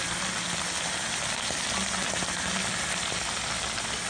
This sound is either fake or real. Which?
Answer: real